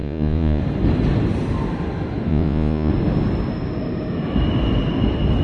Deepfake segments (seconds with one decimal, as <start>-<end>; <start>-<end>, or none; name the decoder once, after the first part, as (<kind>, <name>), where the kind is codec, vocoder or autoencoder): 0.0-0.6 (vocoder, Vocos); 2.3-2.9